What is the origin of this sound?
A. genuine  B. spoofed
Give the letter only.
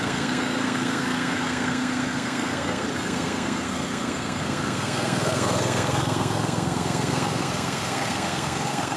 B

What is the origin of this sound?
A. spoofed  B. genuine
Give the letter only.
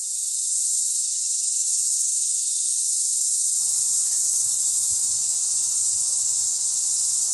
A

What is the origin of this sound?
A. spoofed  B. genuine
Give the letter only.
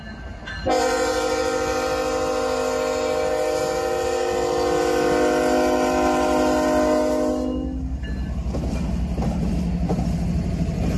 B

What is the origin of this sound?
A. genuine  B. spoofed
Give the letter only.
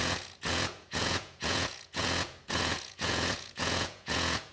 B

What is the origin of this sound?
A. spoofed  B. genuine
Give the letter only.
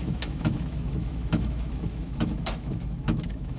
A